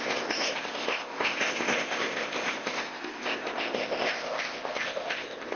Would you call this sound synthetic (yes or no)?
yes